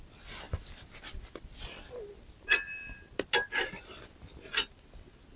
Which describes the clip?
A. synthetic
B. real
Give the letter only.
B